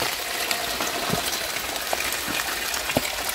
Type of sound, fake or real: real